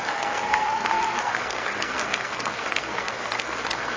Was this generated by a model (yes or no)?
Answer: yes